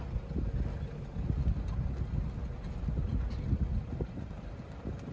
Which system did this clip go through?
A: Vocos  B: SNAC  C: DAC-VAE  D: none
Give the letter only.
D